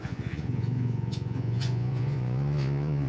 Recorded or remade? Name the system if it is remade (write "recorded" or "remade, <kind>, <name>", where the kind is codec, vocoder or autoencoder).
remade, vocoder, Vocos